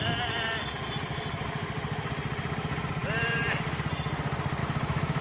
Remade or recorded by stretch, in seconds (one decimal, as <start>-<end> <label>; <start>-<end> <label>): 0.0-4.6 recorded; 4.6-5.2 remade